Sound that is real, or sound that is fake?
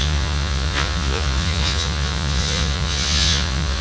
fake